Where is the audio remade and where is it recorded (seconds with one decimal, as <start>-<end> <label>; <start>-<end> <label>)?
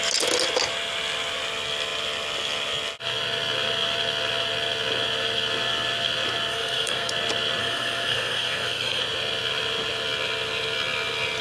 0.0-6.5 recorded; 6.5-7.1 remade; 7.1-7.6 recorded; 7.6-9.0 remade; 9.0-11.4 recorded